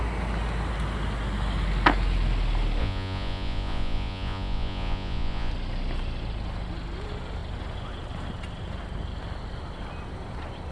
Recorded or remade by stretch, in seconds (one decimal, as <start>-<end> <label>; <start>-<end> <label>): 0.0-2.8 recorded; 2.8-5.5 remade; 5.5-10.7 recorded